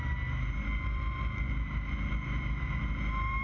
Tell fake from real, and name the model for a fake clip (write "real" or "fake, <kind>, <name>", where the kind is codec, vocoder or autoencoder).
real